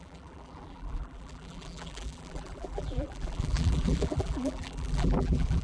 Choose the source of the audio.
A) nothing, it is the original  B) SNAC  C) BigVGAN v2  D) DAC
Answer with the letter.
C